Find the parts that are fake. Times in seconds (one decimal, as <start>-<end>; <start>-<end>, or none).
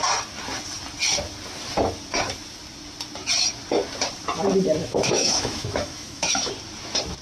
4.8-6.5